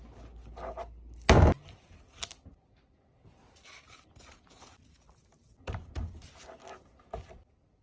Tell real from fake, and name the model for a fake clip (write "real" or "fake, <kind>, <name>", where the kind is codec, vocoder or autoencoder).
real